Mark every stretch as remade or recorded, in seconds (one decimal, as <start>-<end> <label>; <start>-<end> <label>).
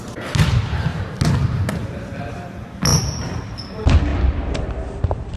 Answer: 0.0-5.4 recorded